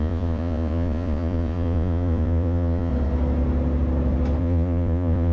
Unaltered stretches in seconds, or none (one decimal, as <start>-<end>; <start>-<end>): 2.9-4.4